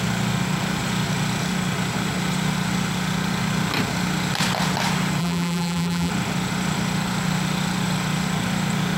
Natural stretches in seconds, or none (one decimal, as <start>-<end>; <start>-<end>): 0.0-5.2; 6.1-9.0